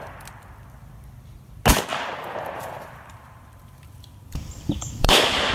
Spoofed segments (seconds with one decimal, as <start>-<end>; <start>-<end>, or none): 1.9-5.5